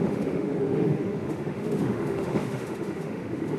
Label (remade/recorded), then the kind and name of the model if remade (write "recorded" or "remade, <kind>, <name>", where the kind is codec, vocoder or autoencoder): remade, autoencoder, DAC-VAE